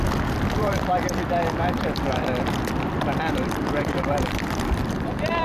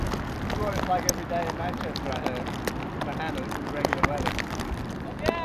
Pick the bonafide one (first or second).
second